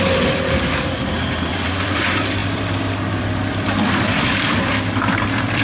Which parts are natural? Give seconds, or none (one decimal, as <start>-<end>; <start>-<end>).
none

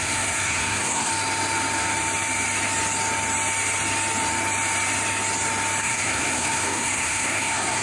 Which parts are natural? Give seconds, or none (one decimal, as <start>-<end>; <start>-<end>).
1.1-5.8

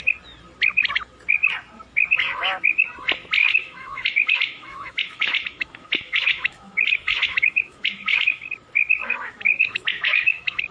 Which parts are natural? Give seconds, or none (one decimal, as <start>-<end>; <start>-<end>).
0.0-3.4; 8.5-9.0